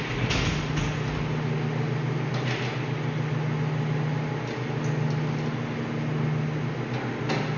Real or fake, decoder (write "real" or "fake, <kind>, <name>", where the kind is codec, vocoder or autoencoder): real